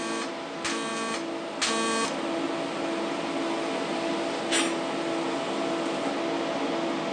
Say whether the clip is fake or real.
real